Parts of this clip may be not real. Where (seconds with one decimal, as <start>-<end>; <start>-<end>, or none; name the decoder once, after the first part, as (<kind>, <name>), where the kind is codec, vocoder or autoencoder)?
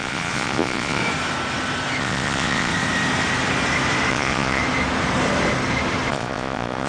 0.0-1.0 (vocoder, Vocos); 2.0-2.7; 4.1-4.6; 6.1-6.9